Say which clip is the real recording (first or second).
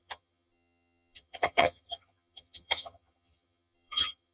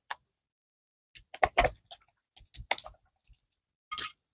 second